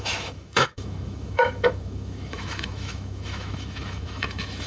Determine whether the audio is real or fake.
fake